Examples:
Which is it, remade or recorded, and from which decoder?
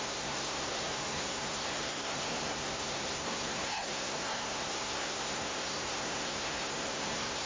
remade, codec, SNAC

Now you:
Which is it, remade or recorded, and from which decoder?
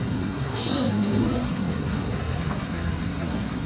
remade, codec, SNAC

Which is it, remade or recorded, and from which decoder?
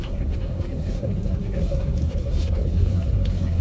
remade, codec, SNAC